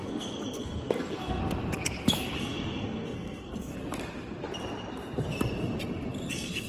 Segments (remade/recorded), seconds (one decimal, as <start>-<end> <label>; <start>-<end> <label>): 0.0-1.4 remade; 1.4-2.4 recorded; 2.4-3.7 remade; 3.7-6.3 recorded; 6.3-6.7 remade